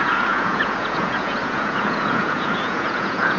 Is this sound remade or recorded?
remade